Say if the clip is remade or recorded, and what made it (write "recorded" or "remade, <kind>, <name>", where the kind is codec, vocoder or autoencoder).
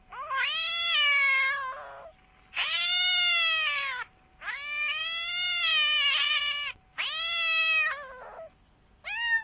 recorded